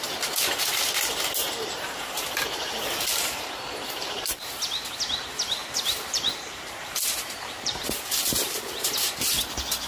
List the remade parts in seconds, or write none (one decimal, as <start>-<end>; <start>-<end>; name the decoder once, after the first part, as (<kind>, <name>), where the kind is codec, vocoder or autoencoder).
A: 1.4-4.4 (vocoder, BigVGAN v2); 5.6-8.6